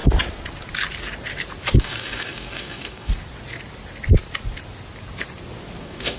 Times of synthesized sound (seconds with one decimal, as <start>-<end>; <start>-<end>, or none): 1.8-3.1; 5.8-6.2